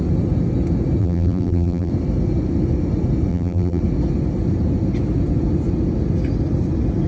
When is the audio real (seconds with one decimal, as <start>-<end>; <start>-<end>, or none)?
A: 0.0-1.0; 1.9-3.3; 3.8-7.1